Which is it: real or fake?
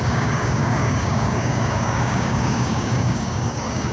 fake